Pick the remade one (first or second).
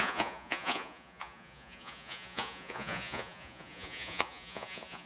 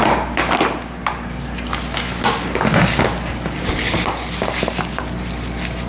first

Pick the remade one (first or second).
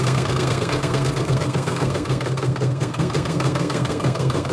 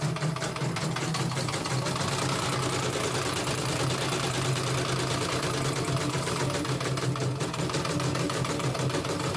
first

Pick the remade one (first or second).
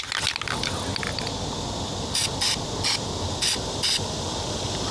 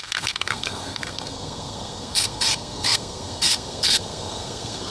second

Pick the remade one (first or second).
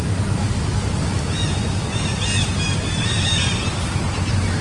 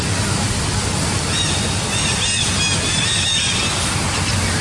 first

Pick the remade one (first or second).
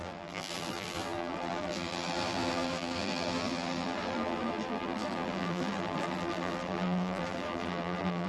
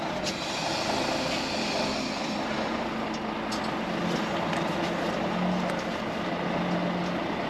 first